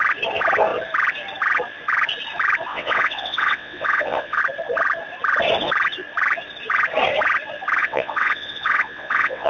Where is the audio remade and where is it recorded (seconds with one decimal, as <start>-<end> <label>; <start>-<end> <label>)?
0.0-2.7 recorded; 2.7-4.4 remade; 4.4-7.8 recorded; 7.8-9.5 remade